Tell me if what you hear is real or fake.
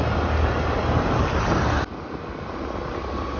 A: real